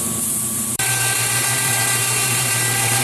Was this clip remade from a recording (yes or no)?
yes